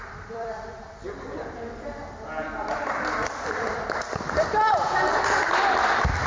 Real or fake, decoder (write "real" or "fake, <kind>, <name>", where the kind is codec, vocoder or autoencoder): fake, vocoder, BigVGAN v2